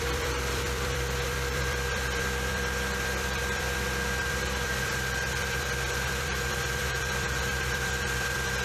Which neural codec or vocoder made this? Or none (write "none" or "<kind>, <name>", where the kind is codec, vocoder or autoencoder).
vocoder, BigVGAN v2